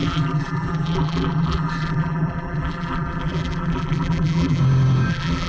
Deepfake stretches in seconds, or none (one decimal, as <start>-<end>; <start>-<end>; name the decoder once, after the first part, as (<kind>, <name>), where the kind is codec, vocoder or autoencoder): 0.0-4.6 (vocoder, BigVGAN v2); 5.1-5.5